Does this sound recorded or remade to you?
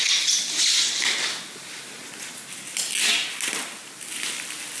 recorded